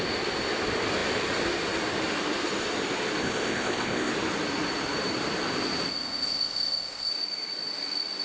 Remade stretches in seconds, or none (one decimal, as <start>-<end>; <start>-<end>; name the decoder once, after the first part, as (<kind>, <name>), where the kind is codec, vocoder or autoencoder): 3.2-4.1 (codec, ZipCodec); 5.9-7.1

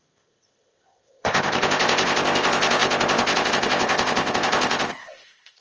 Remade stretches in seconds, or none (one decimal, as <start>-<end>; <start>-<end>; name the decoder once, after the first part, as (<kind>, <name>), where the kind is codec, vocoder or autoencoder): 0.0-5.6 (codec, ZipCodec)

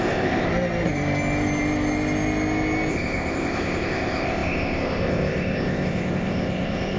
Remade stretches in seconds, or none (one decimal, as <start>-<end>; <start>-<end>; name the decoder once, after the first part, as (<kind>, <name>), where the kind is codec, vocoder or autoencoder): 0.0-0.5 (codec, ZipCodec); 2.9-7.0

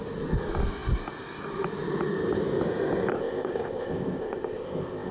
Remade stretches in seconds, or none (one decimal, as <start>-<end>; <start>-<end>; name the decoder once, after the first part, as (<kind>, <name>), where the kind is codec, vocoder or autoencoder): 3.1-5.1 (codec, ZipCodec)